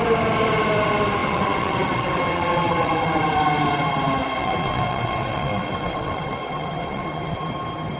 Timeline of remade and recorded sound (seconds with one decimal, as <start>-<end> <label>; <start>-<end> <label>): 0.0-1.2 recorded; 1.2-3.2 remade; 3.2-4.4 recorded; 4.4-7.5 remade; 7.5-8.0 recorded